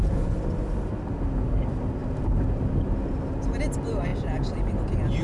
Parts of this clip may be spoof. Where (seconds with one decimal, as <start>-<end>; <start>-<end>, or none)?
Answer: none